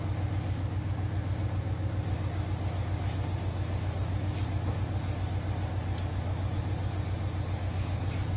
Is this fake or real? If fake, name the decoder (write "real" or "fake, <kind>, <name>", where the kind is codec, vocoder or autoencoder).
real